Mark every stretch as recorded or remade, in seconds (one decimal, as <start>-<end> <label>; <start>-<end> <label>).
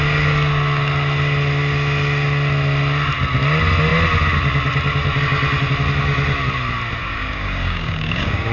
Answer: 0.0-7.0 recorded; 7.0-8.5 remade